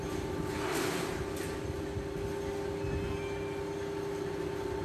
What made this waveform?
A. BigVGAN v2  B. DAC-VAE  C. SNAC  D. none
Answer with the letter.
D